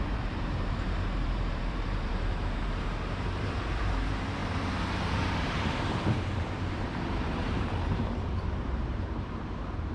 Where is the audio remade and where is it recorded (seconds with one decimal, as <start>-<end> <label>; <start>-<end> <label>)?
0.0-9.9 remade